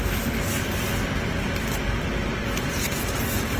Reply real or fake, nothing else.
real